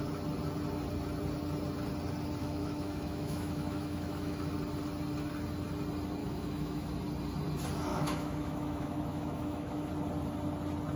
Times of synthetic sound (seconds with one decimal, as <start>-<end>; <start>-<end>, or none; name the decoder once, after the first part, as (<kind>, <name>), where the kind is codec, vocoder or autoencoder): 2.4-4.5 (autoencoder, DAC-VAE); 6.2-6.9; 7.9-9.9